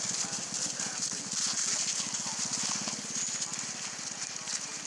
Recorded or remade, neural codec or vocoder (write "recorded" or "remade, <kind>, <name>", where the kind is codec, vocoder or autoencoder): recorded